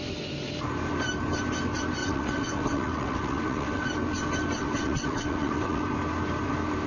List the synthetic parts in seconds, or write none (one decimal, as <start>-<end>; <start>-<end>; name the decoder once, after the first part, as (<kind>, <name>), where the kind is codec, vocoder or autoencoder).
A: 2.0-3.9 (vocoder, WaveNeXt); 4.6-5.8